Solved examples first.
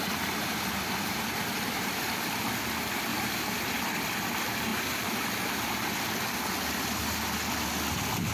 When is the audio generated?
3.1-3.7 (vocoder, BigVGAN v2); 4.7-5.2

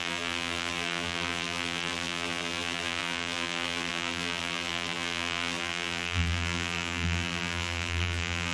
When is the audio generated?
0.0-8.5 (vocoder, BigVGAN v2)